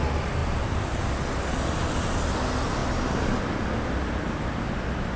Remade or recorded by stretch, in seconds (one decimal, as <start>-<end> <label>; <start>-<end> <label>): 0.0-5.2 recorded